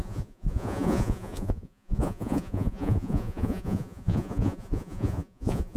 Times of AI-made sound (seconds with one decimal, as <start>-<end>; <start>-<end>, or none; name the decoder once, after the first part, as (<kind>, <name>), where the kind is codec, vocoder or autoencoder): 0.0-5.8 (vocoder, Vocos)